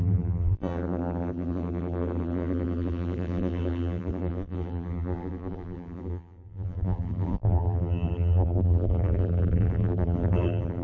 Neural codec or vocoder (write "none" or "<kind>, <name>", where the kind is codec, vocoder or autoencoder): vocoder, BigVGAN v2